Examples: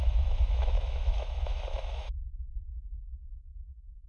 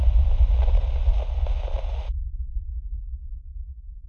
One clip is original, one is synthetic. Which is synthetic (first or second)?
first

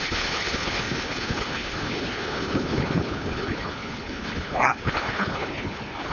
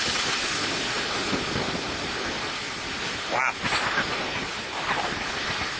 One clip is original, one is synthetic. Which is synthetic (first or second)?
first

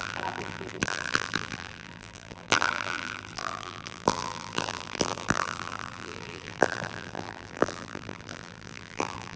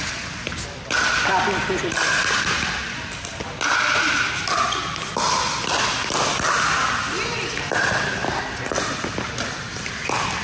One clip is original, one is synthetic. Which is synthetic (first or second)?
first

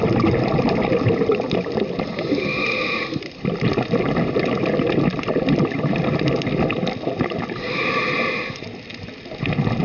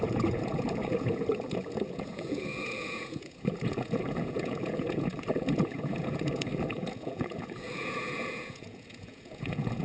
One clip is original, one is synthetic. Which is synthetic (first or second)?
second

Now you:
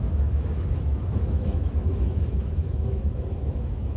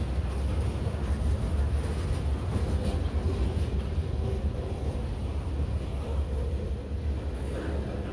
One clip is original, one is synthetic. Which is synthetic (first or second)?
first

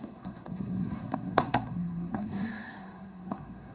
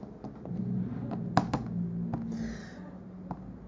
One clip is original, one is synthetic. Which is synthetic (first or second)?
first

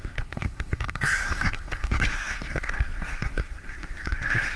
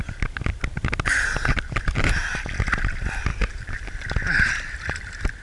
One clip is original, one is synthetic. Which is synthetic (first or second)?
first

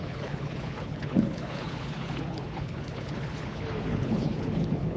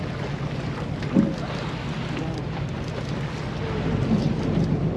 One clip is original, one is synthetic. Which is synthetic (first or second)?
first